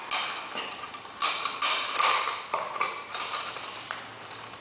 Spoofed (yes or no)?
no